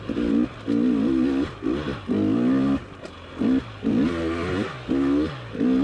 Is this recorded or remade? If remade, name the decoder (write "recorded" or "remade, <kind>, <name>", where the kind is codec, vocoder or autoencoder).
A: recorded